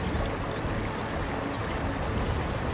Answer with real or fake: real